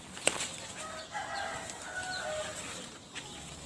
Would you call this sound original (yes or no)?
yes